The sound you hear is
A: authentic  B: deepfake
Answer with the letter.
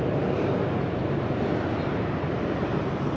A